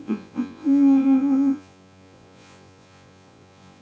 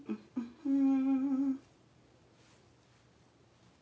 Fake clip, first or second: first